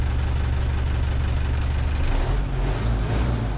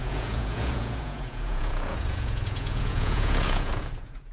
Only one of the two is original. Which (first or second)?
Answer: first